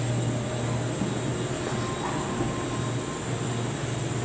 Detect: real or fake real